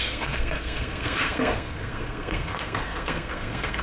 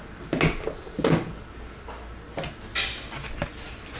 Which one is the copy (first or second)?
first